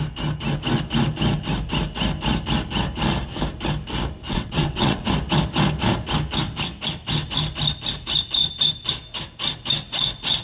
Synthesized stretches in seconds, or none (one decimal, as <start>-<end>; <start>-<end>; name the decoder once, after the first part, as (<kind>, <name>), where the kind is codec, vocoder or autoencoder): 4.2-5.1 (vocoder, WaveNeXt)